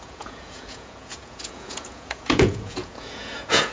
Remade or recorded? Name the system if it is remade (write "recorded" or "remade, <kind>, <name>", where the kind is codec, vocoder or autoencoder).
remade, vocoder, Vocos